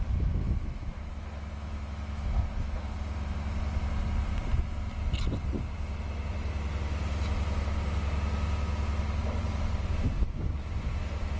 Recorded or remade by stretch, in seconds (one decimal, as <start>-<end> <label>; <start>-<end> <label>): 0.0-0.4 recorded; 0.4-2.9 remade; 2.9-11.4 recorded